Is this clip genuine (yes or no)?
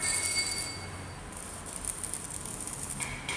yes